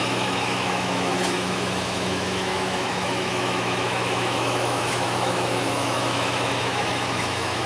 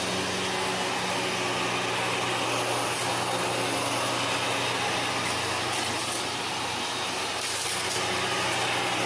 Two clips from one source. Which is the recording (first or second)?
second